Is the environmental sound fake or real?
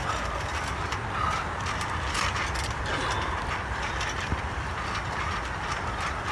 real